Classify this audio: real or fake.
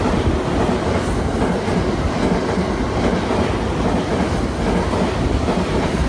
real